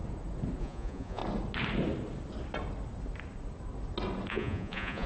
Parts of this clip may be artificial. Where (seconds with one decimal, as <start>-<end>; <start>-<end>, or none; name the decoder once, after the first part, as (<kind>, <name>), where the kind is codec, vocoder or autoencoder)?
0.6-1.2 (vocoder, Vocos); 4.3-5.1